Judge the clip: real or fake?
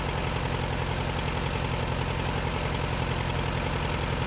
real